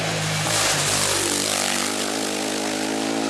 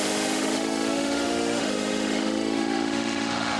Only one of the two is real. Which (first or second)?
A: first